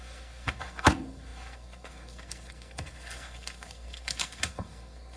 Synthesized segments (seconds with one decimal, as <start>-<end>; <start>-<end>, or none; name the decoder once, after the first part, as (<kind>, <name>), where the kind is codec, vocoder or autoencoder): 0.0-5.2 (codec, SNAC)